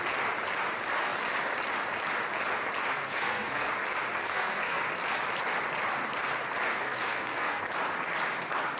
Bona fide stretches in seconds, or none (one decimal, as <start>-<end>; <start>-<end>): 0.0-2.9; 3.7-4.2; 4.8-6.7; 7.6-8.8